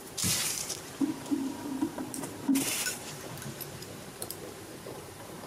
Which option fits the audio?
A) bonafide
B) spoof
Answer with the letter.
B